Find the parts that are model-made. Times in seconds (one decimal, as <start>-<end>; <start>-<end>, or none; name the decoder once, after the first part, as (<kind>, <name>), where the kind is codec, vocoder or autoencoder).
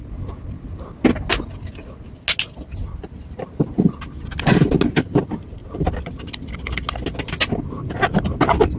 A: none